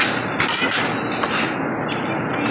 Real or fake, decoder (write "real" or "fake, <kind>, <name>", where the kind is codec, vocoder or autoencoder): real